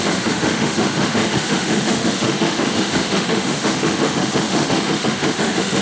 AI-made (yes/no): yes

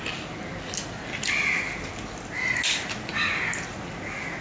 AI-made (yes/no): no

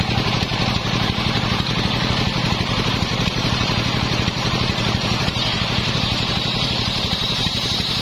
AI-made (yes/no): yes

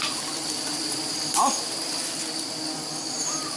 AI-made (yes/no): no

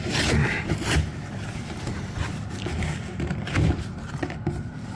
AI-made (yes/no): yes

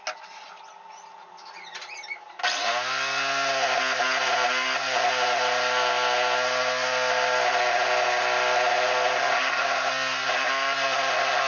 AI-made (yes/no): no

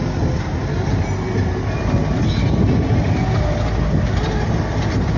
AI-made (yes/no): no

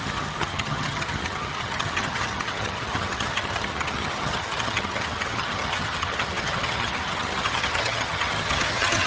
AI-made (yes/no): yes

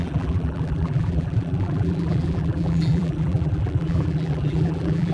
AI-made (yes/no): yes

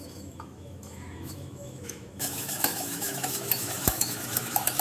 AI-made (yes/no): yes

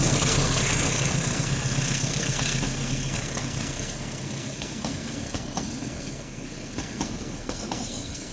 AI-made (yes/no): yes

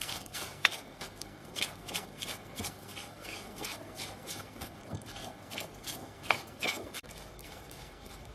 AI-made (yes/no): yes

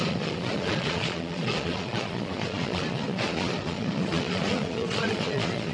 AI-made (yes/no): yes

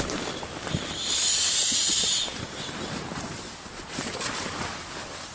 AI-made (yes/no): no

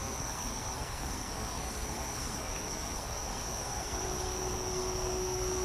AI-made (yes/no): yes